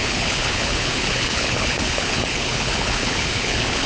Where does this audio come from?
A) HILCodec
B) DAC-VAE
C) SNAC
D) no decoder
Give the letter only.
A